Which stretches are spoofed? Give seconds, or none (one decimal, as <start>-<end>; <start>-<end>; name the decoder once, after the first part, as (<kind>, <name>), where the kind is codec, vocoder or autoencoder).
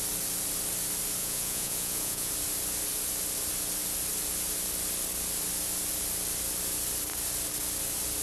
1.2-2.3 (vocoder, Vocos)